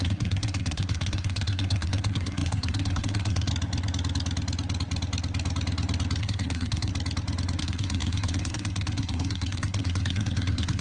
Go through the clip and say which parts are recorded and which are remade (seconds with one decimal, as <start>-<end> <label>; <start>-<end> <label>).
0.0-3.5 remade; 3.5-6.2 recorded; 6.2-6.9 remade; 6.9-7.6 recorded; 7.6-10.8 remade